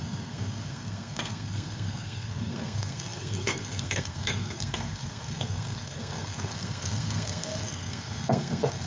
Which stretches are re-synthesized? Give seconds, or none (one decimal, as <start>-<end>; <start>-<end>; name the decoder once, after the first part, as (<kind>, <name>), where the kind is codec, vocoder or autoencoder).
0.0-8.9 (codec, SNAC)